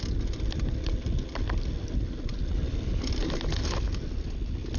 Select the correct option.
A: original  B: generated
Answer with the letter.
A